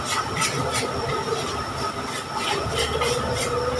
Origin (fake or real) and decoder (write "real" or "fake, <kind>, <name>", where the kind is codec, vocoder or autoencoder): real